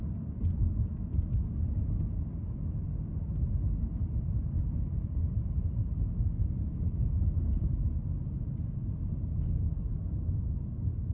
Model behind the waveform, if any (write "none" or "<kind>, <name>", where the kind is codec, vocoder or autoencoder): none